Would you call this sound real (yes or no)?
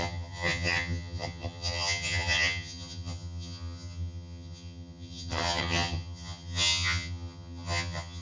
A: no